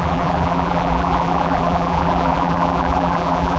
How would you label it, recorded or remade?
remade